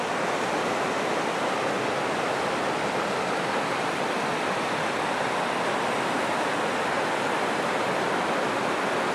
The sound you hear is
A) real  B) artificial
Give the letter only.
A